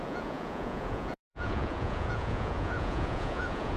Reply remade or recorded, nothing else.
remade